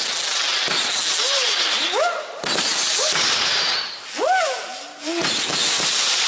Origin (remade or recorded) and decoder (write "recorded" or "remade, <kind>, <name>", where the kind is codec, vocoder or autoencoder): recorded